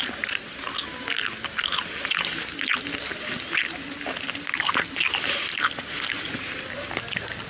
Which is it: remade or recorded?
recorded